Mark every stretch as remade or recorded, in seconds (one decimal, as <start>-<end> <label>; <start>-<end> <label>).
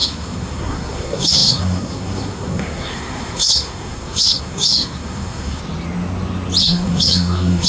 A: 0.0-5.6 remade; 5.6-6.6 recorded; 6.6-7.7 remade